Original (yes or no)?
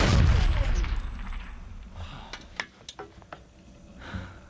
yes